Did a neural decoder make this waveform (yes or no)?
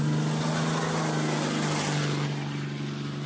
no